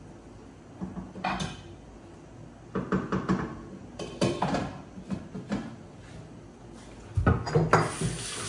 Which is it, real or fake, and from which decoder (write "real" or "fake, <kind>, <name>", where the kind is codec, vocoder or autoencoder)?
real